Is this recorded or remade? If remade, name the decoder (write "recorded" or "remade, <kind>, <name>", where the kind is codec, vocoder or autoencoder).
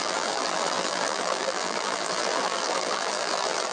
remade, vocoder, BigVGAN v2